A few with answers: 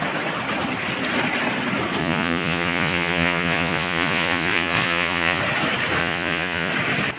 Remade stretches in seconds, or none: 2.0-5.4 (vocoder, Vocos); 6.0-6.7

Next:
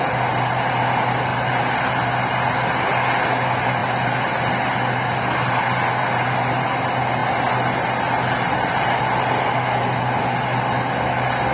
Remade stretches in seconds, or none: none

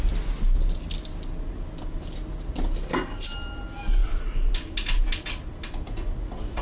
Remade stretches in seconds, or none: none